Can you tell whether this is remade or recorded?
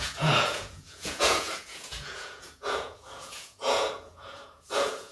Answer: remade